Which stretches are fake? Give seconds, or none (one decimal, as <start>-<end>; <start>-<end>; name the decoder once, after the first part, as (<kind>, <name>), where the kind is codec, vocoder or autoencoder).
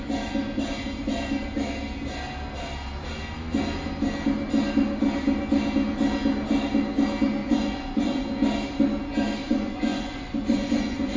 7.4-8.3 (vocoder, Vocos); 9.4-11.2